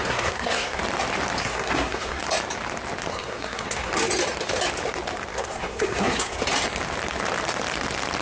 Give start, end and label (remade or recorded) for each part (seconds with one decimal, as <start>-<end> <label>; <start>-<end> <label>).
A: 0.0-0.8 remade; 0.8-1.4 recorded; 1.4-2.2 remade; 2.2-3.1 recorded; 3.1-3.9 remade; 3.9-5.3 recorded; 5.3-6.4 remade; 6.4-8.2 recorded